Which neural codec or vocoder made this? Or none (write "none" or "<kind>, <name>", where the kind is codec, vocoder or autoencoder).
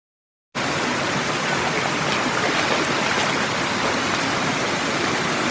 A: none